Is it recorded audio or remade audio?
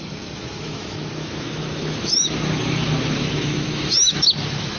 remade